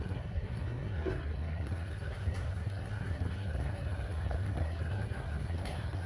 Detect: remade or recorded remade